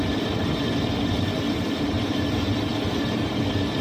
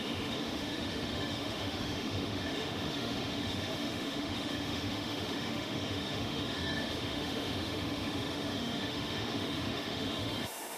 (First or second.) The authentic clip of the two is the first